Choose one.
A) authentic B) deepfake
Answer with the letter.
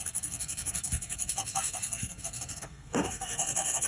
B